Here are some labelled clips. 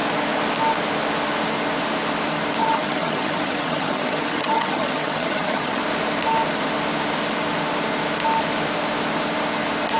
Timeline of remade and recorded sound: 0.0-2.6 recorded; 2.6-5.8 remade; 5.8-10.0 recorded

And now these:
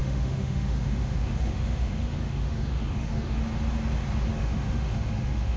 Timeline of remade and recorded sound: 0.0-3.4 remade; 3.4-4.3 recorded; 4.3-5.6 remade